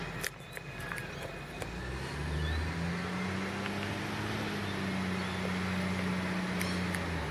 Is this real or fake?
real